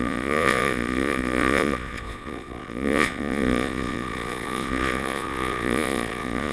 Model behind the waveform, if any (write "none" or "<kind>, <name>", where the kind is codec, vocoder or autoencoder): vocoder, Vocos